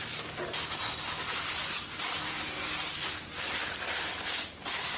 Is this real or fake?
real